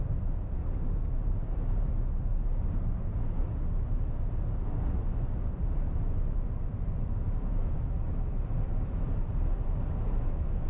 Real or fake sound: real